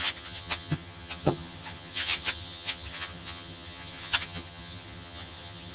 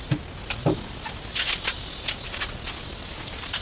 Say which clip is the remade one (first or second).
first